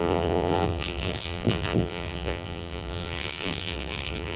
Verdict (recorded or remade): remade